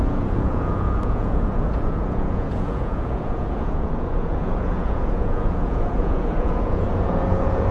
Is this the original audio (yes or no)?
no